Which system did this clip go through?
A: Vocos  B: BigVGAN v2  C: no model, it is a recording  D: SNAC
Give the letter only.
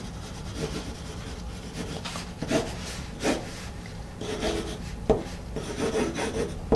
C